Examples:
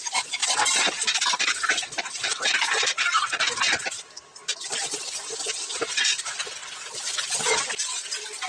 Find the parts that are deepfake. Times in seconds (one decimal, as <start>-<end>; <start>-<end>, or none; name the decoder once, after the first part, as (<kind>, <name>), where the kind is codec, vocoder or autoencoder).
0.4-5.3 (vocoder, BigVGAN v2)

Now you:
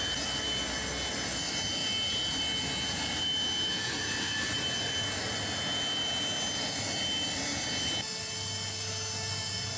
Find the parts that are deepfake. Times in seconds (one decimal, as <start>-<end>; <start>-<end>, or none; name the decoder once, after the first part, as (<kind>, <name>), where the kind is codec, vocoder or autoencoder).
none

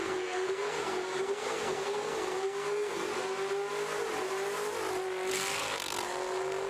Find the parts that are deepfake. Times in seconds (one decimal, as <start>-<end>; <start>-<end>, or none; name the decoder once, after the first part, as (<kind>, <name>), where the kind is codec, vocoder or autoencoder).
0.0-3.1 (codec, SNAC); 5.3-6.7